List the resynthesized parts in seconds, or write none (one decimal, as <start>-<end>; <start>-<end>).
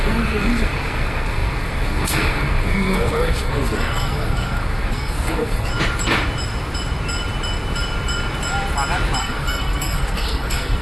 0.0-5.7; 9.2-10.8